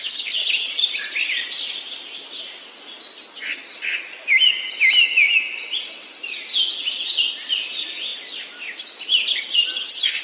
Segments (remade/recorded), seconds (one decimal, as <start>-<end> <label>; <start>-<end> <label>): 0.0-10.2 recorded